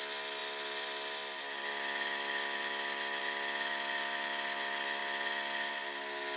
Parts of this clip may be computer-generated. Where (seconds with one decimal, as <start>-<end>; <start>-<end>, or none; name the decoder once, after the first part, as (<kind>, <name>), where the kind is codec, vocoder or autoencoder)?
none

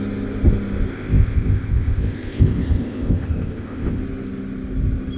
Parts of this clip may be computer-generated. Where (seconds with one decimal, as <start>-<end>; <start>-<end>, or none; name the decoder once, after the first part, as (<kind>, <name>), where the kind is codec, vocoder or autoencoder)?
0.9-4.0 (codec, ZipCodec)

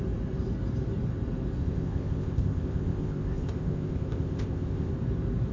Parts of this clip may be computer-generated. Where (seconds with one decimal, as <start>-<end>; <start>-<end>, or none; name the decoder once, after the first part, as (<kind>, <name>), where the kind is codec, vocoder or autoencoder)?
1.6-4.9 (codec, ZipCodec)

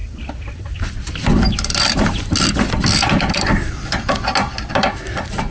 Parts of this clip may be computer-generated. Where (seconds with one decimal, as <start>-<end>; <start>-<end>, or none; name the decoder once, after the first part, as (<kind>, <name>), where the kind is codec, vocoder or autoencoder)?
none

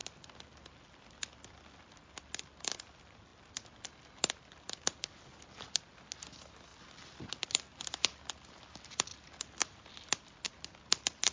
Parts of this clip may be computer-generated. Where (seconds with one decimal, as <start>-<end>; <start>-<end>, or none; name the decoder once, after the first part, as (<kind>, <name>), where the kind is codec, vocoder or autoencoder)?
none

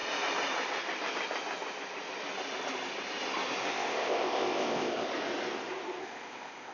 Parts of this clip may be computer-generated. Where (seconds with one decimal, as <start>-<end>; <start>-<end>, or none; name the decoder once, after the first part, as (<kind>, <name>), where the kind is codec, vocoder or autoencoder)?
3.7-5.1 (codec, ZipCodec); 6.0-6.7

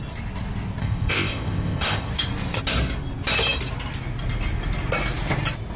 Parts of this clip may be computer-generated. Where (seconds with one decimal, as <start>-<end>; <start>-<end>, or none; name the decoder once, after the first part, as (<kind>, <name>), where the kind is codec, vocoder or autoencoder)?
0.8-2.1 (codec, ZipCodec)

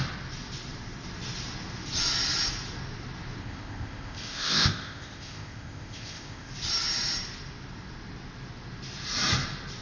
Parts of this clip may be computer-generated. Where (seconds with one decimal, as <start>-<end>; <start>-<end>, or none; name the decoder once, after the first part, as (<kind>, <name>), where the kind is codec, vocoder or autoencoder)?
3.4-6.5 (codec, ZipCodec)